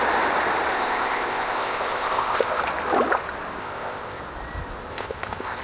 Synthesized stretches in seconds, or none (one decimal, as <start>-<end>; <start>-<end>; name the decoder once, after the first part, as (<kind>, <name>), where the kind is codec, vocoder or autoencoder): 0.7-2.6 (codec, ZipCodec); 3.6-4.2; 4.9-5.6